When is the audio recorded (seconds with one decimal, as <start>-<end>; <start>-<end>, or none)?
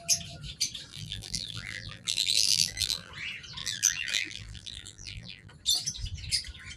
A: 0.0-0.9; 3.1-3.6; 5.5-6.8